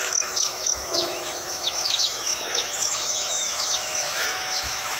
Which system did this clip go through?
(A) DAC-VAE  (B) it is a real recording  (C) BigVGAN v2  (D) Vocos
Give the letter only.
A